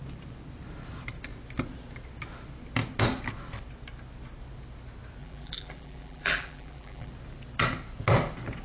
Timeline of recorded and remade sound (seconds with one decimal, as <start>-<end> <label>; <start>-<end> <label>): 0.0-5.2 recorded; 5.2-7.1 remade; 7.1-8.6 recorded